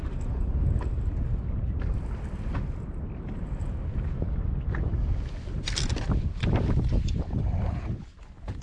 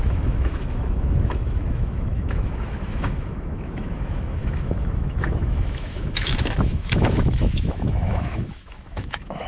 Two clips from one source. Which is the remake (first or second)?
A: second